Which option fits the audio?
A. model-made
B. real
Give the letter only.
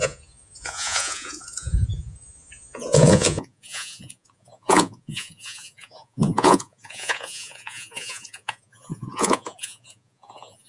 A